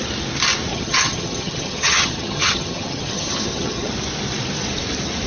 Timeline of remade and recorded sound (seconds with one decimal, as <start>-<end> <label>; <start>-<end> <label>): 0.0-0.7 recorded; 0.7-3.9 remade; 3.9-5.3 recorded